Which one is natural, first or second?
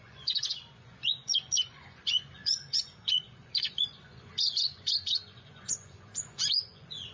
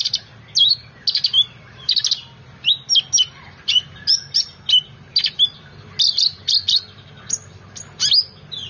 second